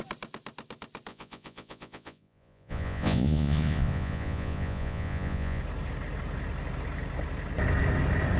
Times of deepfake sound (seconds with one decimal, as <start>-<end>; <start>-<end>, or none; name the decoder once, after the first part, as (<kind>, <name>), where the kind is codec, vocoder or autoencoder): 1.1-5.6 (vocoder, Vocos)